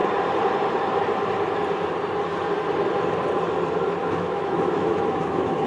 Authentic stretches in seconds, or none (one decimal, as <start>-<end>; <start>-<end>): 0.0-4.0